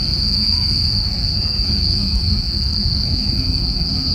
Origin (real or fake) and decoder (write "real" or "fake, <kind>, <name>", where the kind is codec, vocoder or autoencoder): fake, codec, SNAC